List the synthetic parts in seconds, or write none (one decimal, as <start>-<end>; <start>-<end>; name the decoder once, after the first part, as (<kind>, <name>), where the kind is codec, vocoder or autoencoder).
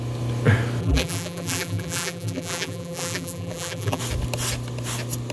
0.8-4.0 (vocoder, BigVGAN v2)